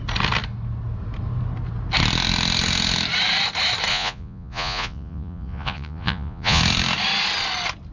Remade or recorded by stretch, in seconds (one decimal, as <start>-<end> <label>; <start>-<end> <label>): 0.0-3.9 recorded; 3.9-6.6 remade; 6.6-7.9 recorded